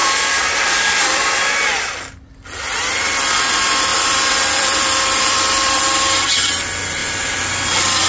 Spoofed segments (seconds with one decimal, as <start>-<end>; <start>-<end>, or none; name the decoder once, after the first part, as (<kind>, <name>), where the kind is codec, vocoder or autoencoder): 0.0-1.5 (vocoder, BigVGAN v2); 3.9-5.8